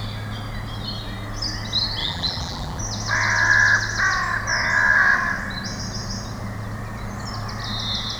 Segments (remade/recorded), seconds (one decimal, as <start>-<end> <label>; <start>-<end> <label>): 0.0-2.0 recorded; 2.0-2.8 remade; 2.8-8.2 recorded